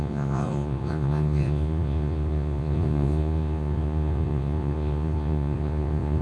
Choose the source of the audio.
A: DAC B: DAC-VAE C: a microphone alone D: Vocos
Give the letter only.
D